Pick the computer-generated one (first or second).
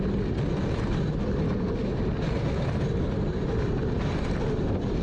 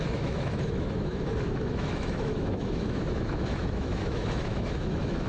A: second